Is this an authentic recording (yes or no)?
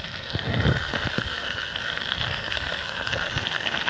no